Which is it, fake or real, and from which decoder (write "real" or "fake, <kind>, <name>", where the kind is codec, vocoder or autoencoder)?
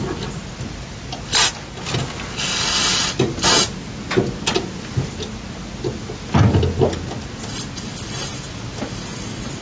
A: real